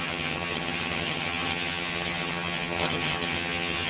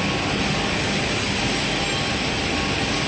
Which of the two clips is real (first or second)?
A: second